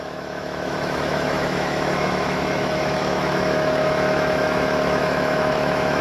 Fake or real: fake